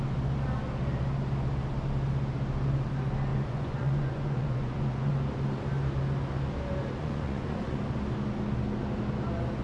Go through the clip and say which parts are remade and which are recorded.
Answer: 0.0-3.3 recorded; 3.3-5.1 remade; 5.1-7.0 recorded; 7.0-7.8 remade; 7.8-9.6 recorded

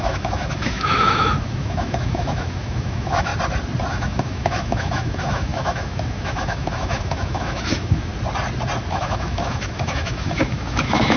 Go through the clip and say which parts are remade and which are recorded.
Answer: 0.0-3.3 remade; 3.3-3.9 recorded; 3.9-8.1 remade; 8.1-8.9 recorded; 8.9-11.2 remade

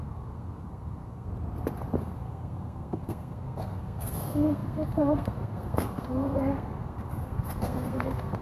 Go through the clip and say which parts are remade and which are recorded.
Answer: 0.0-1.3 remade; 1.3-2.0 recorded; 2.0-8.4 remade

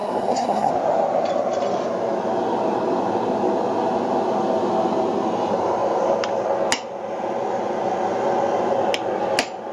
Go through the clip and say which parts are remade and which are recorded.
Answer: 0.0-0.7 remade; 0.7-9.7 recorded

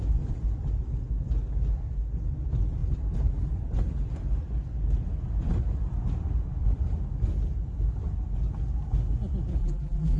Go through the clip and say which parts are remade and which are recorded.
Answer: 0.0-9.6 recorded; 9.6-10.2 remade

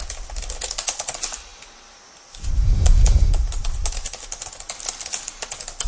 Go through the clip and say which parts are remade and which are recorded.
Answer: 0.0-5.9 recorded

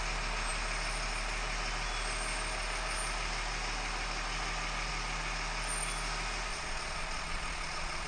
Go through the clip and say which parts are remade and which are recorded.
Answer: 0.0-6.5 recorded; 6.5-8.1 remade

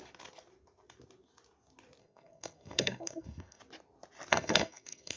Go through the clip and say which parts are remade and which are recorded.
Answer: 0.0-2.0 recorded; 2.0-3.6 remade; 3.6-4.3 recorded; 4.3-5.2 remade